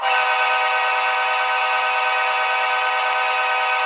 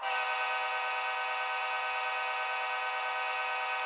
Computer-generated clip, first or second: first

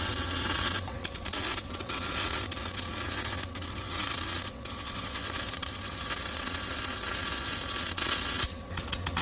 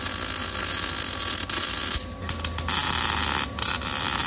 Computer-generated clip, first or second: first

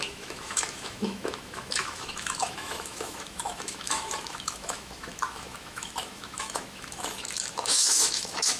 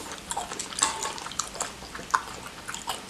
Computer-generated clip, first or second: first